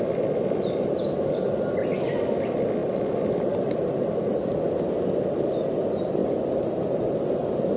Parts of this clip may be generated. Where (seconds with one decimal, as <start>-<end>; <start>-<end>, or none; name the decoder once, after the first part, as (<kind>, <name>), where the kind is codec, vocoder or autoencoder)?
none